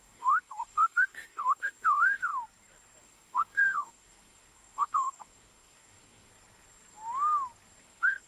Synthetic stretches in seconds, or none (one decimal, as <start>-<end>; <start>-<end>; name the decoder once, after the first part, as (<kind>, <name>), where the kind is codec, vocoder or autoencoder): 0.0-2.3 (codec, DAC); 3.0-6.3; 7.8-8.3

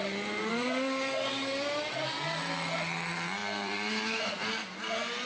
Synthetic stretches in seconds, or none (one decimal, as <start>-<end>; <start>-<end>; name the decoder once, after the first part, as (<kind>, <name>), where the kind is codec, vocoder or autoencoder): none

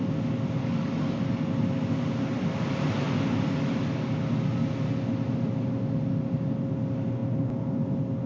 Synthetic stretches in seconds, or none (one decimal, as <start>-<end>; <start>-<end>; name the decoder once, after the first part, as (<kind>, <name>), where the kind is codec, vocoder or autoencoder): 0.6-1.2 (codec, DAC)

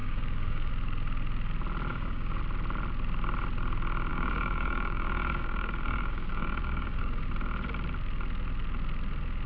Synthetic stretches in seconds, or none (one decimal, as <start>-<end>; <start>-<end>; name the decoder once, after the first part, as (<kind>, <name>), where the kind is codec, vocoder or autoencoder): 0.0-0.7 (codec, DAC); 1.9-2.4; 4.1-7.3

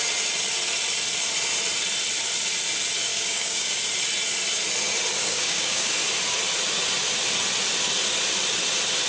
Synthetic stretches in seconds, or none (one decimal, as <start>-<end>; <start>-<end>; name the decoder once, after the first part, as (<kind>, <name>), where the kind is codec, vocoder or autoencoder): 3.1-3.8 (codec, DAC); 5.2-5.9

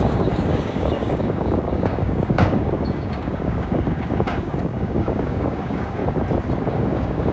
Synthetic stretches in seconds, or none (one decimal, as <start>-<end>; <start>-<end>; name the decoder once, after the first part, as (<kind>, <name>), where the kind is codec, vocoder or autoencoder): 0.0-6.0 (codec, DAC); 6.7-7.3